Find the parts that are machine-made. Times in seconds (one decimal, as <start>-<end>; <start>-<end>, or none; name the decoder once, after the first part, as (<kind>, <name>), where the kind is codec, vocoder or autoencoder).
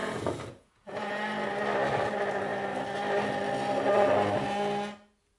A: 0.0-1.2 (vocoder, Vocos)